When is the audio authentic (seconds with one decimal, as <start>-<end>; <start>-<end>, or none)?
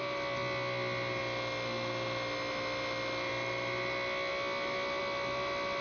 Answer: 0.0-5.8